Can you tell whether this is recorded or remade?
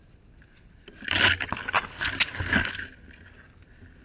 recorded